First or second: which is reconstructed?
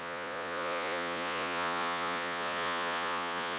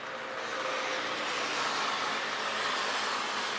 first